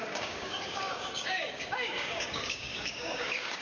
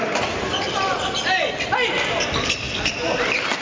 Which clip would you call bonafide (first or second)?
second